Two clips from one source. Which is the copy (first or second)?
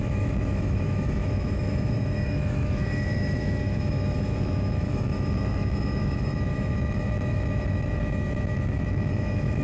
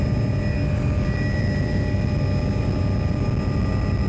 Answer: first